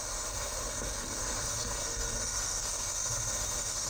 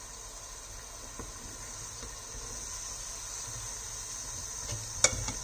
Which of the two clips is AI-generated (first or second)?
first